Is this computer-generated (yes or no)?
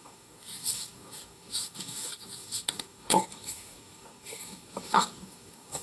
yes